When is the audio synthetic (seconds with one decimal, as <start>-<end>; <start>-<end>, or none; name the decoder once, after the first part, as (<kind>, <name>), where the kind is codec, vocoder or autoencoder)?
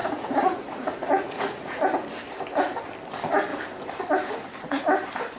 0.0-1.8 (vocoder, Vocos)